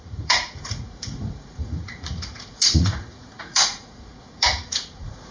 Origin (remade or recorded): remade